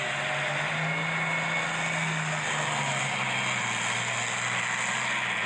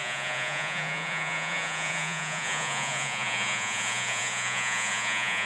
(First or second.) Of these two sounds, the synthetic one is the second